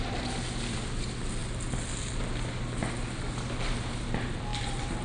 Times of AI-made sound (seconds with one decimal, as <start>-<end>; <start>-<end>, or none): none